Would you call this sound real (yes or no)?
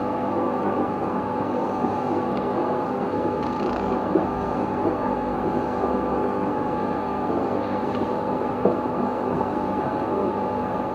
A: no